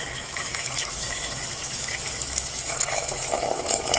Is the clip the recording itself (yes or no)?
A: no